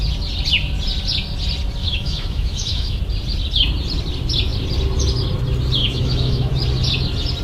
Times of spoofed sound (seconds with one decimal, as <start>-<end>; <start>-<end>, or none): 1.8-3.0; 5.8-6.5